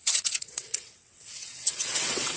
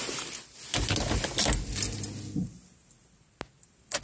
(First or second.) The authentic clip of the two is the second